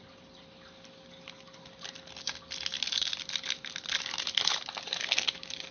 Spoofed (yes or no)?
no